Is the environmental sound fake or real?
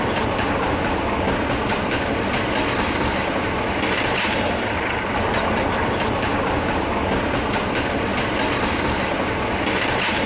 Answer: real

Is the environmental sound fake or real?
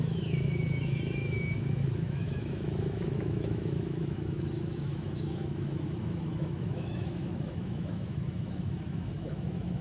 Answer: fake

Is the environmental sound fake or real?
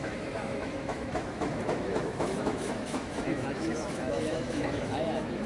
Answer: fake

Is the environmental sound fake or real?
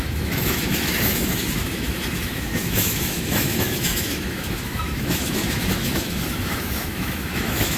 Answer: fake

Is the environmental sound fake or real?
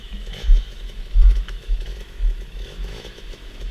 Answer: fake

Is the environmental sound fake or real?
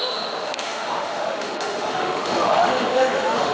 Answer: fake